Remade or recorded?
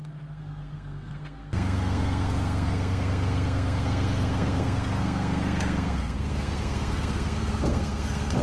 remade